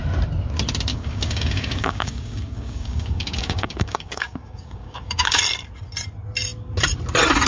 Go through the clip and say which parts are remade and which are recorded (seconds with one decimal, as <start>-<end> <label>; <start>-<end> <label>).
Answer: 0.0-0.9 recorded; 0.9-5.4 remade; 5.4-7.5 recorded